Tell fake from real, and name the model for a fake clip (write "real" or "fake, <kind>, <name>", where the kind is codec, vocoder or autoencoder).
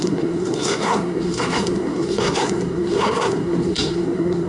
fake, codec, SNAC